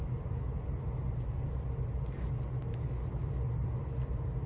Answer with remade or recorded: recorded